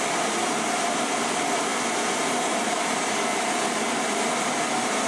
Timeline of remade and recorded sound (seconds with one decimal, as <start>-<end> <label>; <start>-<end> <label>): 0.0-1.7 remade; 1.7-5.1 recorded